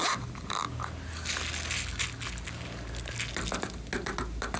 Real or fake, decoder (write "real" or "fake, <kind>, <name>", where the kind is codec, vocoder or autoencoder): real